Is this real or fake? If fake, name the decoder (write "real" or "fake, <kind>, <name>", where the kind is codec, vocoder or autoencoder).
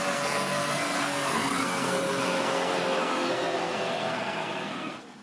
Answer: fake, codec, SNAC